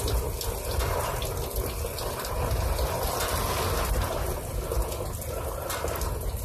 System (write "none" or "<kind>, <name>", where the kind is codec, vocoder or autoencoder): none